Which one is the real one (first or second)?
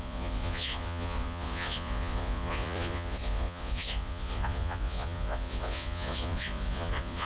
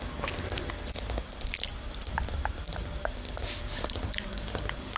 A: second